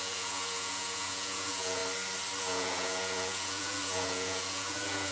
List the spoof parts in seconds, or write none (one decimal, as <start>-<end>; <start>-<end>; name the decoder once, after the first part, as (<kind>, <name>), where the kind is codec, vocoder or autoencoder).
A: 0.0-1.8 (vocoder, Vocos); 2.4-5.1